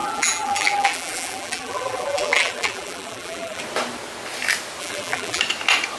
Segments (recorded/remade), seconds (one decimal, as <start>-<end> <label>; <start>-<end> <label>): 0.0-3.6 remade; 3.6-4.8 recorded; 4.8-5.4 remade; 5.4-6.0 recorded